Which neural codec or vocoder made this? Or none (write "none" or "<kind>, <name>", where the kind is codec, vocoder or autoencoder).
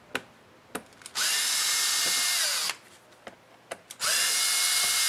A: none